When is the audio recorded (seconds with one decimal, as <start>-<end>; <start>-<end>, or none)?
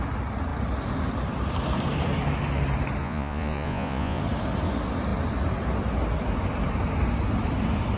0.0-3.0; 4.2-8.0